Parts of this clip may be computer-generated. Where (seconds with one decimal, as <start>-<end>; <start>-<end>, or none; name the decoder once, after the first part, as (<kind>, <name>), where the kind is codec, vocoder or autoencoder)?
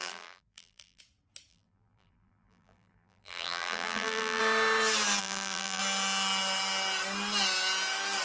0.0-1.0 (vocoder, BigVGAN v2); 1.5-4.4; 5.2-5.8